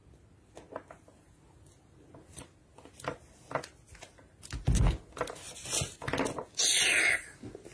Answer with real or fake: real